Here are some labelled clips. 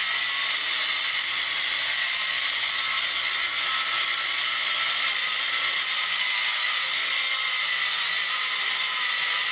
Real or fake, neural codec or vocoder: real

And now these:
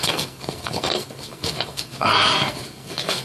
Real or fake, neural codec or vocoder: fake, codec, SNAC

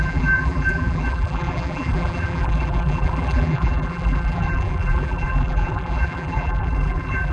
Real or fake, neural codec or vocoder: fake, vocoder, BigVGAN v2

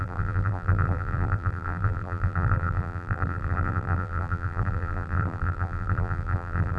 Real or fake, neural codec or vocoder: fake, vocoder, BigVGAN v2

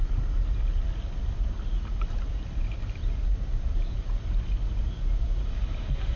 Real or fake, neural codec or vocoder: real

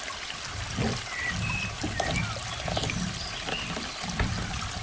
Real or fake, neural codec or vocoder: real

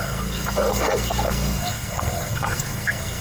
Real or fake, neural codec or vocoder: fake, codec, SNAC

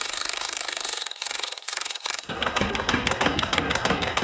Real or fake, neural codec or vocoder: fake, codec, SNAC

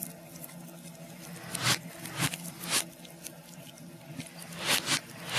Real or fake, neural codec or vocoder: real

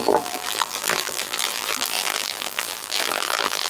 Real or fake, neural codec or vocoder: fake, vocoder, BigVGAN v2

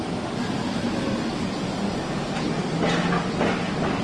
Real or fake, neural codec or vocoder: real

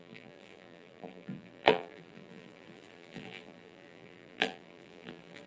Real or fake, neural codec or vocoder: fake, vocoder, BigVGAN v2